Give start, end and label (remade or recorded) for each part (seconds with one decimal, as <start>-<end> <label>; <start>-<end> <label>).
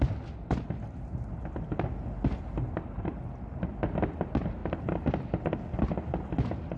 0.0-6.8 recorded